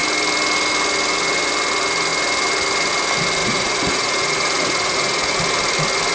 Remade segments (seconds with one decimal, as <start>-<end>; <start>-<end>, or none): 3.4-5.3